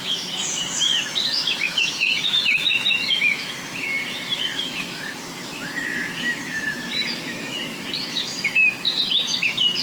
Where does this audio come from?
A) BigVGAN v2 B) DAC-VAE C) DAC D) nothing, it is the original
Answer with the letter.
B